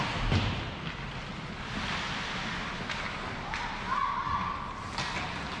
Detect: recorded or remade recorded